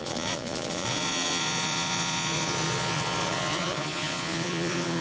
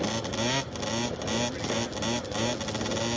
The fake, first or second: first